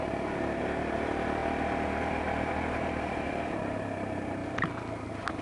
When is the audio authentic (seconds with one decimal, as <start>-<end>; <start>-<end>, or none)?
1.4-2.1; 4.4-5.4